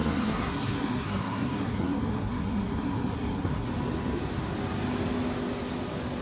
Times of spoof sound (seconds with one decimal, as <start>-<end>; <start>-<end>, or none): 0.0-3.7